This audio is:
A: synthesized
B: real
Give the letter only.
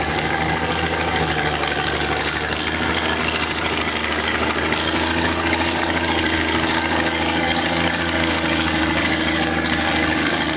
A